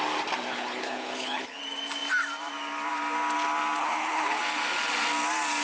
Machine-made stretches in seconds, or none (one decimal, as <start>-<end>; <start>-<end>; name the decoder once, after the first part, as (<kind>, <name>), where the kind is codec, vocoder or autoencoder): 0.5-1.6 (codec, HILCodec); 3.8-4.4